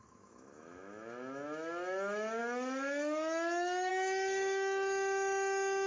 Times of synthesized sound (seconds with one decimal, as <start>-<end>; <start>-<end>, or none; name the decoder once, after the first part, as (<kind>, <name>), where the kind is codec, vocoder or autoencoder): 0.0-5.9 (autoencoder, DAC-VAE)